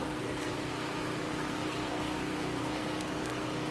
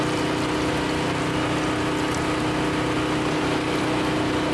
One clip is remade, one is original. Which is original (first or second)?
second